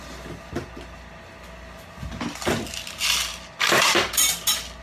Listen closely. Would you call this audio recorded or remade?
recorded